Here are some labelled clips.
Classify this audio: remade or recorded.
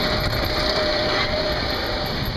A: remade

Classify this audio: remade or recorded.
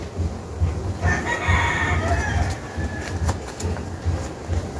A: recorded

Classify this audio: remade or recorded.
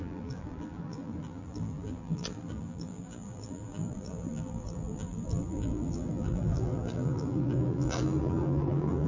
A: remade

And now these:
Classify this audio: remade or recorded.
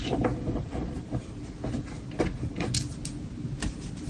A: recorded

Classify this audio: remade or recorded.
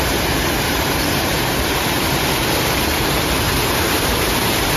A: remade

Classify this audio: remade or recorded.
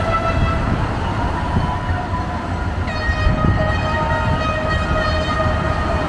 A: recorded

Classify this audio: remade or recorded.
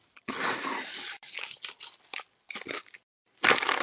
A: remade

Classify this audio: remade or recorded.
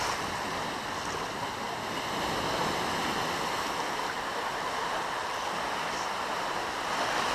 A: recorded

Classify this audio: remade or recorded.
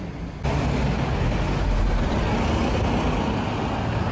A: recorded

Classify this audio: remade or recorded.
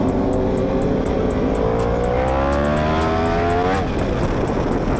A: recorded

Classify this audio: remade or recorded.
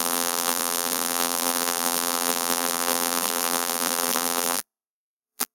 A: remade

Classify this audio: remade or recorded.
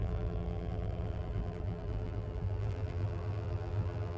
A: remade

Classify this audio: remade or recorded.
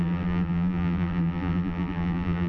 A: remade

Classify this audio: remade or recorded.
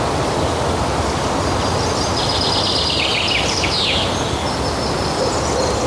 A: recorded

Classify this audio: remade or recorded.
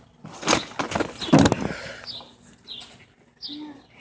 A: recorded